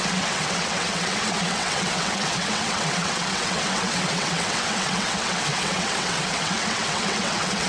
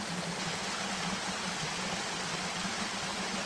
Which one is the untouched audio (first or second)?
second